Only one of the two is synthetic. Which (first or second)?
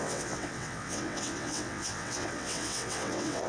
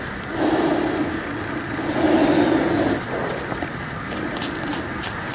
first